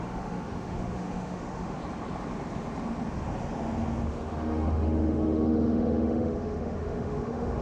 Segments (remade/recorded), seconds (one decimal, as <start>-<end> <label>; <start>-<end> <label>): 0.0-1.8 remade; 1.8-4.1 recorded; 4.1-7.6 remade